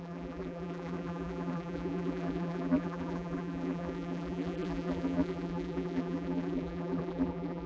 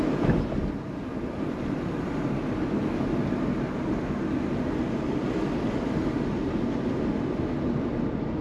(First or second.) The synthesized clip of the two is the first